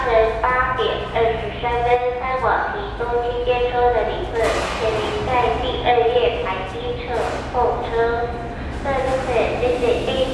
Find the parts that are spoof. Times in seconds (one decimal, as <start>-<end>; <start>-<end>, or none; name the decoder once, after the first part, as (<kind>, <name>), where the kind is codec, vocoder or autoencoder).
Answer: none